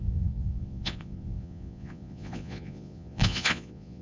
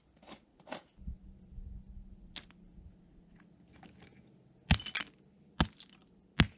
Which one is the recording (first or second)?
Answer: second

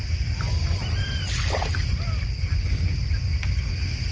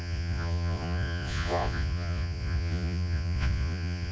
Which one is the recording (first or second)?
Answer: first